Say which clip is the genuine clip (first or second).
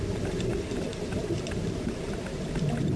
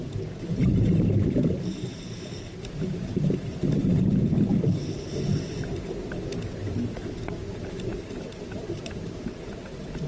second